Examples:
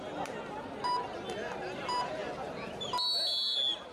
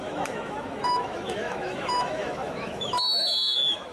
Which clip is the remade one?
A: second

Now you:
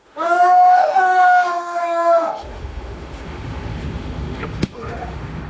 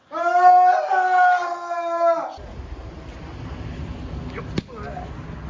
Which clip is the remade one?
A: first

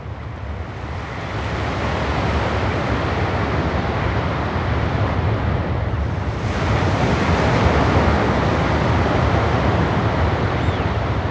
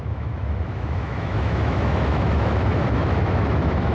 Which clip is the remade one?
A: second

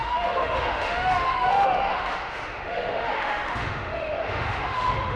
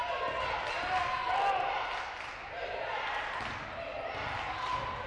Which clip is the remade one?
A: first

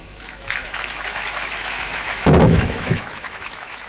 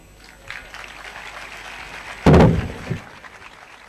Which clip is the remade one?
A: first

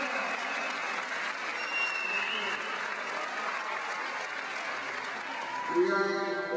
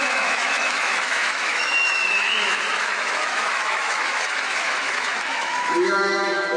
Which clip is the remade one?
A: second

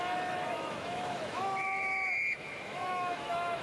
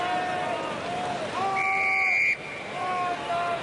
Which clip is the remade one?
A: first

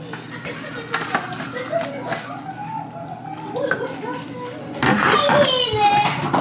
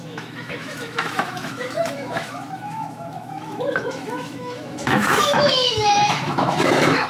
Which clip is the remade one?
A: second